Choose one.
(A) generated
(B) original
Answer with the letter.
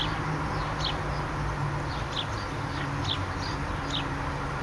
B